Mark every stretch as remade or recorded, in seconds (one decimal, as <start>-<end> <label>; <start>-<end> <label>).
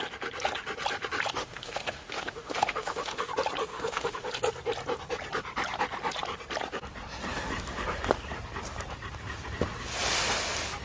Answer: 0.0-1.4 recorded; 1.4-3.3 remade; 3.3-3.7 recorded; 3.7-4.3 remade; 4.3-10.8 recorded